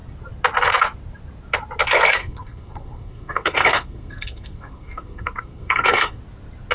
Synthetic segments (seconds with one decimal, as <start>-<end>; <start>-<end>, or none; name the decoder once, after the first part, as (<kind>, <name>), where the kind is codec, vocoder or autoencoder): 2.2-6.2 (codec, SNAC)